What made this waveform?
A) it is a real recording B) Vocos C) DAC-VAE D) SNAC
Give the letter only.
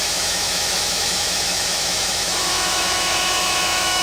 C